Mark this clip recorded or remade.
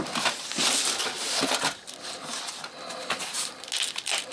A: recorded